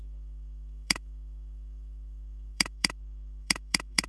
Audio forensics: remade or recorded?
remade